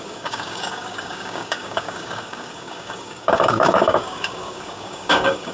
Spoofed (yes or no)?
yes